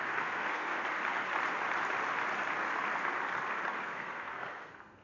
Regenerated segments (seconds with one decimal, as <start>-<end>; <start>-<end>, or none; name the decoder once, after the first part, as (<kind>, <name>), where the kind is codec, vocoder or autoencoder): 0.0-0.8 (codec, SNAC); 3.8-5.0